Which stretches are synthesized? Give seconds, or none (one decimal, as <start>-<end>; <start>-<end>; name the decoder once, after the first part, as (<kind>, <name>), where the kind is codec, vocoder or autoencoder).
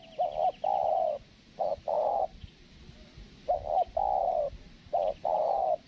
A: none